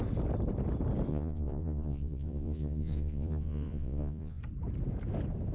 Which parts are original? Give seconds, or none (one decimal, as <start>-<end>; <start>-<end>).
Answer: 0.0-1.1; 4.4-5.5